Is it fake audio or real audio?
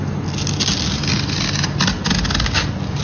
real